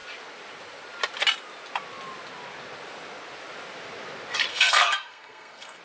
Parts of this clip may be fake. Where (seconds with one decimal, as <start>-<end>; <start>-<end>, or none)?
4.5-5.8